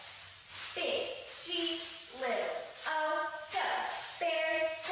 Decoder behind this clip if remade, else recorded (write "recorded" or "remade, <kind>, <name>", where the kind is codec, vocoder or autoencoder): recorded